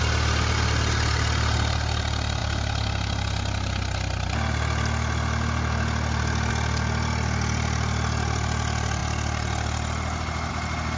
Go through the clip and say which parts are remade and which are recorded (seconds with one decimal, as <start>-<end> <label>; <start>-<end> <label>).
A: 0.0-11.0 recorded